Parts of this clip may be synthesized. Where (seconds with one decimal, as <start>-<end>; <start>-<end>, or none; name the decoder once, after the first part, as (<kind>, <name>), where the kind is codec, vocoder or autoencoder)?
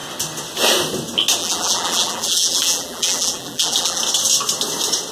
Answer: 1.4-4.0 (vocoder, BigVGAN v2)